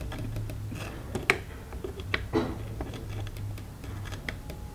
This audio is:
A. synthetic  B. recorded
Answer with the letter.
B